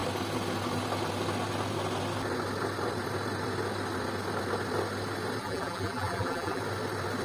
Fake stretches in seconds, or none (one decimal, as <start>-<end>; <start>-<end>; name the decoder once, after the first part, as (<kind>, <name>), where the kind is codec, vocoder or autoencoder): 5.4-6.6 (vocoder, BigVGAN v2)